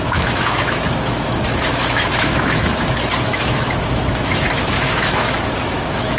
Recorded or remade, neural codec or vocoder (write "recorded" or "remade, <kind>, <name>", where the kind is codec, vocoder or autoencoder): remade, autoencoder, DAC-VAE